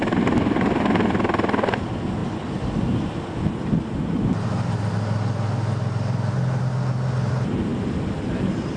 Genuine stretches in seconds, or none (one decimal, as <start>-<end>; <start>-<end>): 0.0-8.8